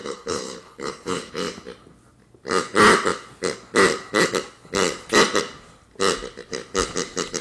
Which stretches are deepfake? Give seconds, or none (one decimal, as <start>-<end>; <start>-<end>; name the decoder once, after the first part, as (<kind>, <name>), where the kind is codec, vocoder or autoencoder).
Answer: 0.0-1.3 (codec, HILCodec)